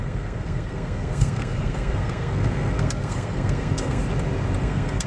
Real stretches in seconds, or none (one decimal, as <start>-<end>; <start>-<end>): 4.0-4.6